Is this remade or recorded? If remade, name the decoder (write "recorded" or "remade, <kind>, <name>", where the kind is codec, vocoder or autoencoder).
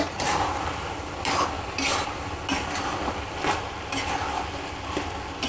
recorded